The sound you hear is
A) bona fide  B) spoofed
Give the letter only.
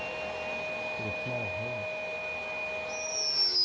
A